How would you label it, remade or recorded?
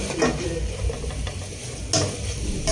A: recorded